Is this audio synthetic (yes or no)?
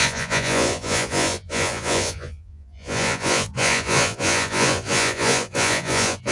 yes